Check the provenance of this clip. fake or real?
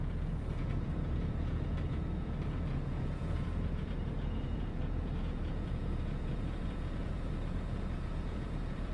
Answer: fake